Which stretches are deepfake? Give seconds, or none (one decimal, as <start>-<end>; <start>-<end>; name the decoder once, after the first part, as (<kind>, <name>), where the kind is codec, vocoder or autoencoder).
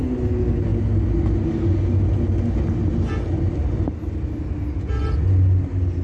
none